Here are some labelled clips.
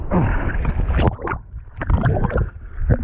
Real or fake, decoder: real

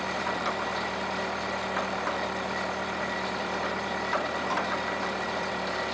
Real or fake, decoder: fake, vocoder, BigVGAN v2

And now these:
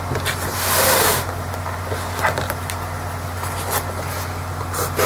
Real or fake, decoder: fake, vocoder, BigVGAN v2